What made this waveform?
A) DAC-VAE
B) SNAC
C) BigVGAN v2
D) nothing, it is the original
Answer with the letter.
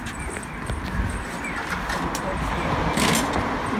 D